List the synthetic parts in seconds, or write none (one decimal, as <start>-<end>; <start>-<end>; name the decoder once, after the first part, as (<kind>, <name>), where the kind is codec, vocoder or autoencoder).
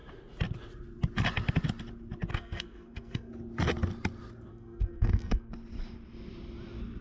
2.3-3.3 (codec, SNAC); 4.5-5.5